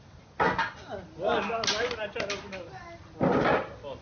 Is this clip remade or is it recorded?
recorded